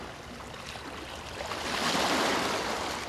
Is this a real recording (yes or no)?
yes